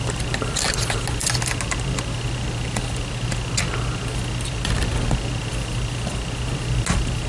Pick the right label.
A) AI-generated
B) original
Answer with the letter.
B